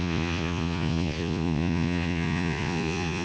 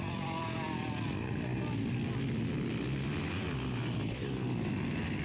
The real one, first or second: second